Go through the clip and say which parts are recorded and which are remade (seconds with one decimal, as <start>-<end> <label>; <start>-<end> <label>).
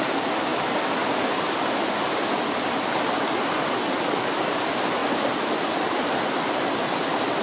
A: 0.0-5.0 recorded; 5.0-6.4 remade; 6.4-7.4 recorded